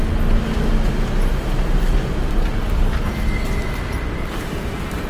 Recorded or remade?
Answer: recorded